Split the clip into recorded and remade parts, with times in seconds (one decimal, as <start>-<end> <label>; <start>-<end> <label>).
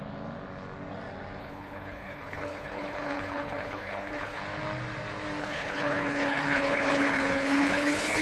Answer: 0.0-1.4 recorded; 1.4-4.4 remade; 4.4-5.4 recorded; 5.4-8.2 remade